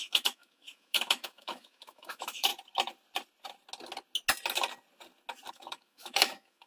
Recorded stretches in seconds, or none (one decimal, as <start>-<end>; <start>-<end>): 2.5-5.5